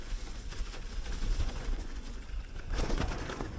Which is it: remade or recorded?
remade